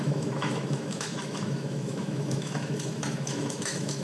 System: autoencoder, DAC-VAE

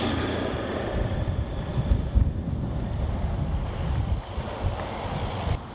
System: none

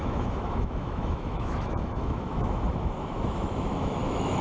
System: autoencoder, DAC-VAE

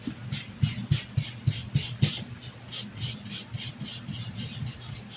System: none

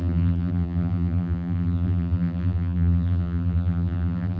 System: vocoder, BigVGAN v2